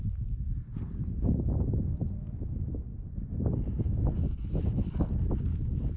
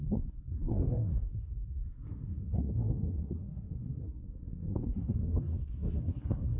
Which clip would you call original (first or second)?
first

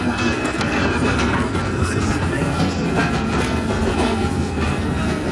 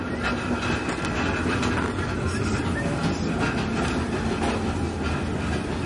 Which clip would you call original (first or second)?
second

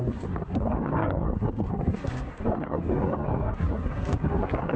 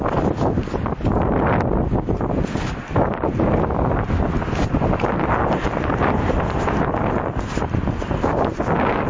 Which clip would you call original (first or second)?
second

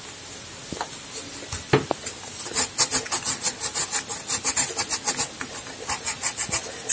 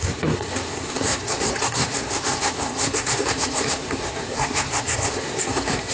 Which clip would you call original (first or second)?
first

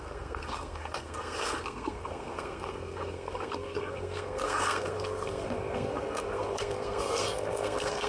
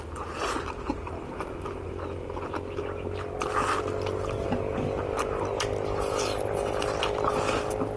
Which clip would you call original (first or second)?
second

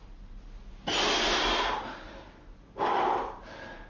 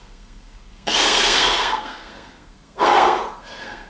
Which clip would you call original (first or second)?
first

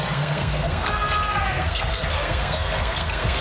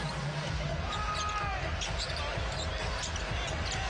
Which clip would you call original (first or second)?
second